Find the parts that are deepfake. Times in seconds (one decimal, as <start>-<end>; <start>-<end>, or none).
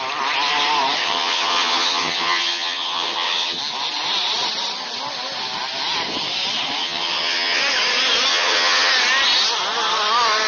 1.0-3.6; 6.8-7.6; 8.3-8.9